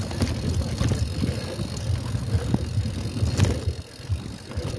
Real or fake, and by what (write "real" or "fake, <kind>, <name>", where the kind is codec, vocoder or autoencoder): real